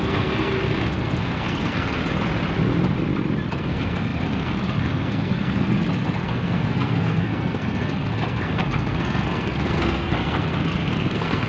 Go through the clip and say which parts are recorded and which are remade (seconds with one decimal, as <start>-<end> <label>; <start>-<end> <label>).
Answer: 0.0-2.0 remade; 2.0-3.5 recorded; 3.5-11.5 remade